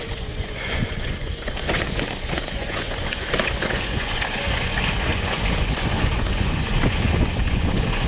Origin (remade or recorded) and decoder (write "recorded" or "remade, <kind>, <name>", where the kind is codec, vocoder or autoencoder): remade, vocoder, Vocos